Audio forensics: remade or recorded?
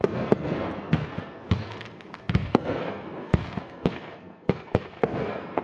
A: remade